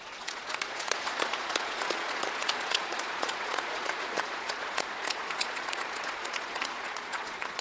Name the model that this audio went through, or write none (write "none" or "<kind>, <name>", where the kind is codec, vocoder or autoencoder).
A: vocoder, Vocos